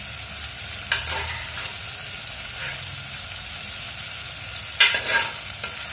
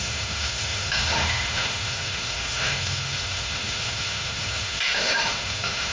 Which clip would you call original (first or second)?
first